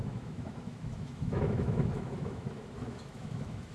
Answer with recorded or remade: remade